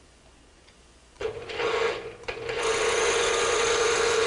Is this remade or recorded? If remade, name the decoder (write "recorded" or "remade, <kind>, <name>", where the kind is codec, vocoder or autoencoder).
remade, vocoder, Vocos